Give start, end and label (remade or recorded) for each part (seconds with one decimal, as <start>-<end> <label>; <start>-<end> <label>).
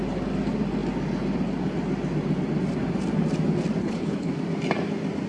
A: 0.0-3.8 recorded; 3.8-4.3 remade; 4.3-5.3 recorded